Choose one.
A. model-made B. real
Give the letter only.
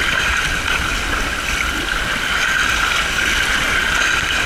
B